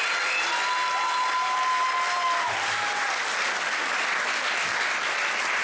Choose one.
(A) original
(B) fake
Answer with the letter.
A